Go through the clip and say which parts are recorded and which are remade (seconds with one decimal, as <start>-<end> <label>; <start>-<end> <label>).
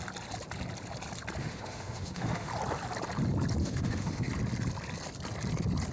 0.0-1.4 recorded; 1.4-2.5 remade; 2.5-3.6 recorded; 3.6-4.3 remade; 4.3-5.9 recorded